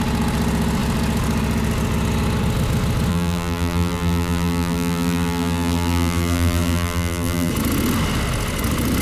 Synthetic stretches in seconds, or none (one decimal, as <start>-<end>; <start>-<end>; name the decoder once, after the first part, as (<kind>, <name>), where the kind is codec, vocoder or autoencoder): 3.1-7.5 (vocoder, BigVGAN v2)